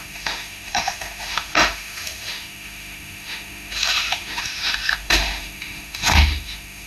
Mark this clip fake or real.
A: fake